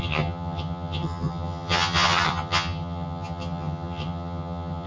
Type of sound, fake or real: fake